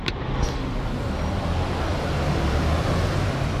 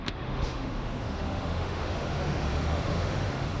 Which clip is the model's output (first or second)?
second